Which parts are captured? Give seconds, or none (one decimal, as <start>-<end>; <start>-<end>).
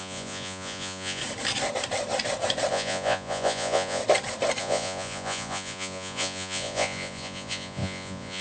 1.2-2.7; 4.0-4.6